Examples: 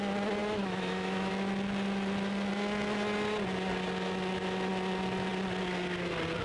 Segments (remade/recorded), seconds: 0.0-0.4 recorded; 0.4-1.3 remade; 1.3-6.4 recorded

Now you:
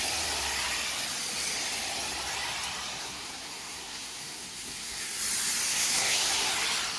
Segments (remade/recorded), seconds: 0.0-3.0 recorded; 3.0-5.2 remade; 5.2-5.7 recorded; 5.7-6.5 remade; 6.5-7.0 recorded

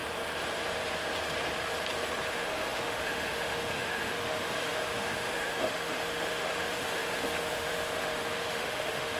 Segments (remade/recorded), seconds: 0.0-2.3 recorded; 2.3-9.2 remade

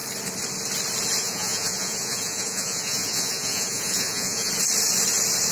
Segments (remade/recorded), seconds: 0.0-1.2 recorded; 1.2-4.5 remade; 4.5-5.5 recorded